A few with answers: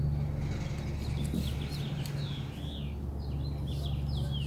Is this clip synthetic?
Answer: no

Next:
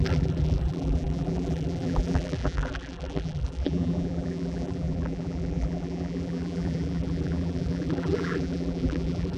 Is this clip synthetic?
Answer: yes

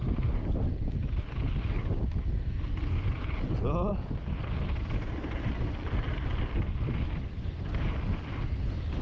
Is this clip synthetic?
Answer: no